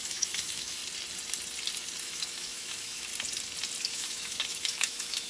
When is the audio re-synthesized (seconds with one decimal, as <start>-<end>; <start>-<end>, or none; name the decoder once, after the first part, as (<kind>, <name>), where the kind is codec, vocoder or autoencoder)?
0.0-0.8 (autoencoder, DAC-VAE); 2.0-3.1; 3.8-5.3